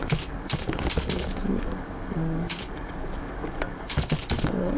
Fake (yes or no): yes